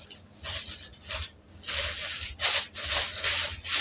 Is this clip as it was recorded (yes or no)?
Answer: yes